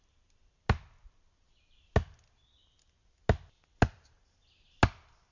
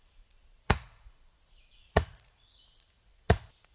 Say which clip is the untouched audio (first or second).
first